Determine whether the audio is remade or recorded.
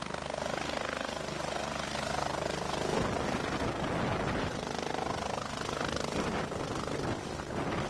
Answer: recorded